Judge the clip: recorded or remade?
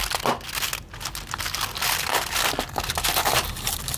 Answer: recorded